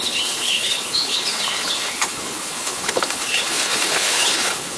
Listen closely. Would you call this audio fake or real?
fake